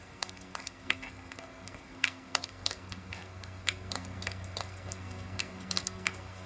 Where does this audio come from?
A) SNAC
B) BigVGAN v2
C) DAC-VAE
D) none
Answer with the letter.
A